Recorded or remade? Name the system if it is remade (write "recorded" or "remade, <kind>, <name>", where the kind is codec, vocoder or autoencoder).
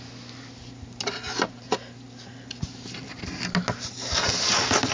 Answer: recorded